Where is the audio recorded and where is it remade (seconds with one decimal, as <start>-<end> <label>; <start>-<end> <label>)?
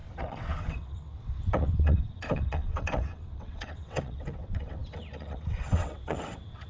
0.0-6.7 remade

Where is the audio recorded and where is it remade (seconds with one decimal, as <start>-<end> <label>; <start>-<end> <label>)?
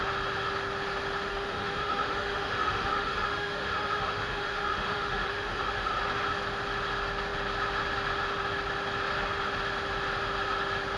0.0-1.3 recorded; 1.3-6.0 remade; 6.0-11.0 recorded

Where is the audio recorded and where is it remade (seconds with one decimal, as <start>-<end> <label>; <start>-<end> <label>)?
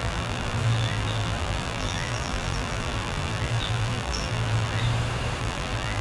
0.0-4.8 remade; 4.8-5.4 recorded; 5.4-6.0 remade